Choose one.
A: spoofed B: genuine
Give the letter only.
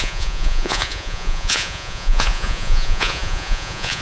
A